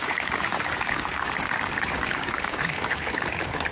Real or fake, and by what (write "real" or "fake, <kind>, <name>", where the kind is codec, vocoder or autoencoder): fake, codec, DAC